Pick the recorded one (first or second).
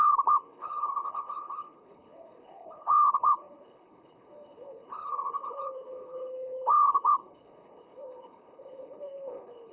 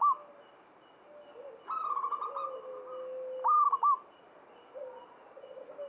second